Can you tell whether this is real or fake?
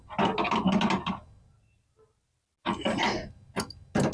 real